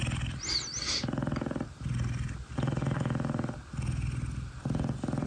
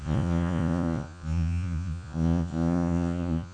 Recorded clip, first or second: first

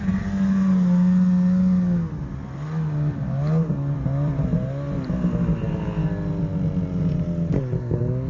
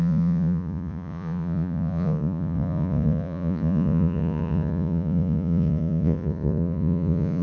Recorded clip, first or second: first